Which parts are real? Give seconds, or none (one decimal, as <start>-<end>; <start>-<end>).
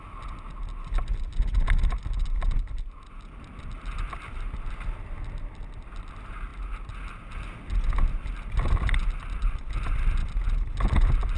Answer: 0.0-11.4